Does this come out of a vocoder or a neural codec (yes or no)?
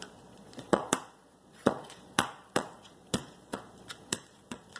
yes